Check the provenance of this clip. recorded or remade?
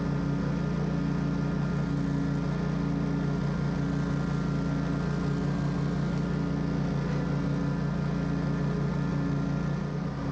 recorded